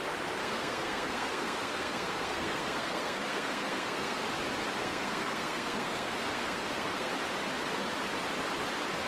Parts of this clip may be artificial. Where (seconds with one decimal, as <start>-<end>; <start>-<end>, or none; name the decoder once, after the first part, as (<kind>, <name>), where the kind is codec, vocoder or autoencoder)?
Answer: 0.4-4.2 (codec, SNAC); 4.8-7.1